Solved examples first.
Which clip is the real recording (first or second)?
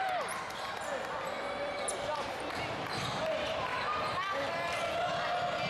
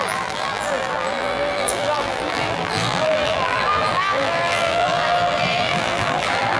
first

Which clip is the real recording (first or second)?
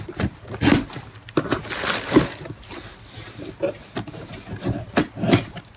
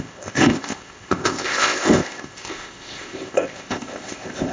first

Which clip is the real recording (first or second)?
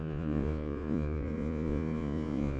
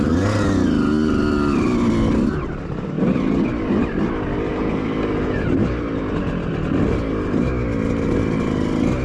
second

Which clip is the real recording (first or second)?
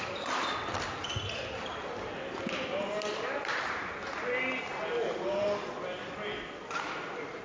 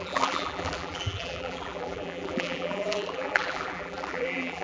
first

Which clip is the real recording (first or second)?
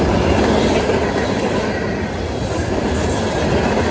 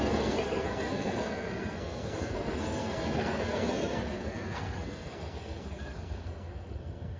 first